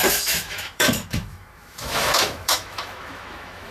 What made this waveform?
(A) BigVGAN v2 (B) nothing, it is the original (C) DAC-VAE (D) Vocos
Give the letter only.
C